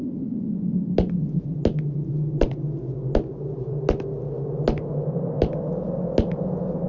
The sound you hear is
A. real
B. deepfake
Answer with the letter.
A